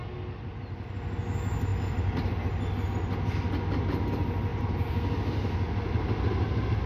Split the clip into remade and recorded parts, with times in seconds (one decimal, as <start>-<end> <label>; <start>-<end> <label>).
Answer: 0.0-1.7 recorded; 1.7-2.4 remade; 2.4-4.5 recorded; 4.5-5.1 remade; 5.1-6.9 recorded